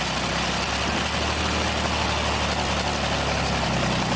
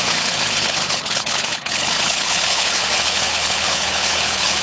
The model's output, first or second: second